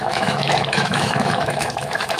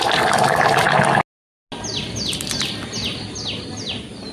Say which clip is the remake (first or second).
first